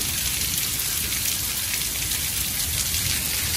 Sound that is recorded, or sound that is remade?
recorded